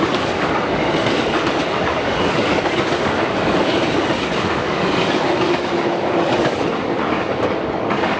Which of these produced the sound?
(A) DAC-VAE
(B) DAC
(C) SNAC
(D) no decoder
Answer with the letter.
B